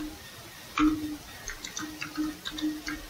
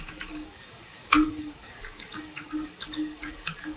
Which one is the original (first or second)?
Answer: first